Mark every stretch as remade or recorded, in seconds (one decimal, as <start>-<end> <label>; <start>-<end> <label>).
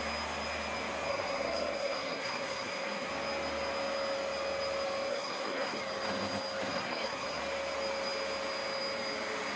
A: 0.0-1.1 recorded; 1.1-3.1 remade; 3.1-5.1 recorded; 5.1-5.8 remade; 5.8-6.7 recorded; 6.7-7.4 remade; 7.4-9.6 recorded